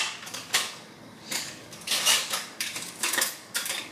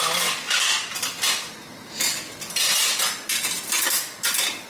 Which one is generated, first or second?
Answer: first